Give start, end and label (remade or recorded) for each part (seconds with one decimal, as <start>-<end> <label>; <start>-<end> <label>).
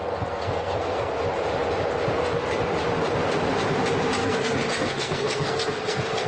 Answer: 0.0-1.1 remade; 1.1-4.2 recorded; 4.2-6.3 remade